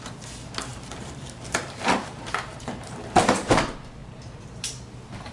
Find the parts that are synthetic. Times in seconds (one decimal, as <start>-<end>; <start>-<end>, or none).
0.7-3.6; 4.0-4.8